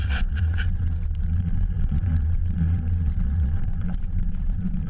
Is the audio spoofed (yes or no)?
yes